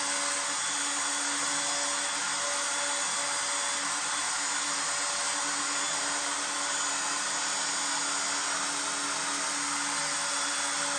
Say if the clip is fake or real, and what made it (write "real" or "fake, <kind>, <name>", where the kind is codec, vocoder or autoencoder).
real